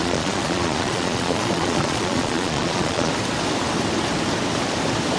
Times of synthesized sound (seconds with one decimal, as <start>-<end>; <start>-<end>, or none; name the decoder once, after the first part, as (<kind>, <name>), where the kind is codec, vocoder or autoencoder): 0.0-3.1 (vocoder, Vocos)